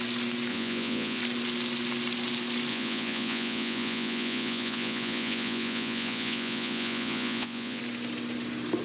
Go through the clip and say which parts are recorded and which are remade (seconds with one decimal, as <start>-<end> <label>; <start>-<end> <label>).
0.0-0.5 recorded; 0.5-1.2 remade; 1.2-2.7 recorded; 2.7-7.8 remade; 7.8-8.8 recorded